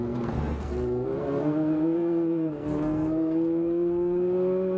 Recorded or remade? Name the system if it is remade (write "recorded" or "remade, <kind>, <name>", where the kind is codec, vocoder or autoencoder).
remade, codec, SNAC